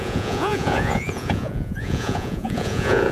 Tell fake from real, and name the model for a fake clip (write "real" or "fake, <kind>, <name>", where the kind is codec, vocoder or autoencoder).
fake, vocoder, Vocos